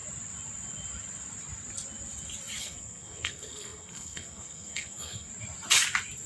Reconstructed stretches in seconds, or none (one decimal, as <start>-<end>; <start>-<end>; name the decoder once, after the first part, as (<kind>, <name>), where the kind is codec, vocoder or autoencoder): 2.6-5.3 (codec, SNAC)